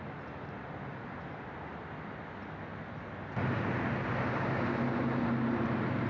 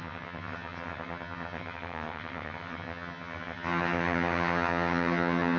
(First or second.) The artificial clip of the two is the second